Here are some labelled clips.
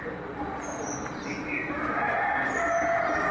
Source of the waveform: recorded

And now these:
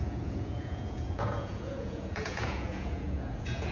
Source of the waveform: remade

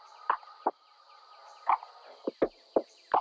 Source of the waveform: recorded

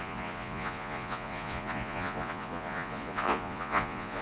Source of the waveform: remade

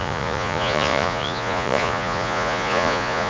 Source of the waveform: remade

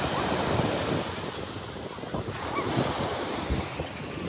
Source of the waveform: recorded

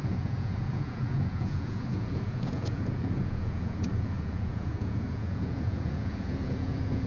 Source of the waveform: remade